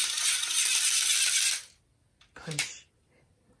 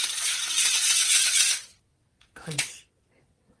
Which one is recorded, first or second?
first